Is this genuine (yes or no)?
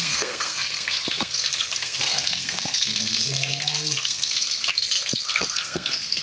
no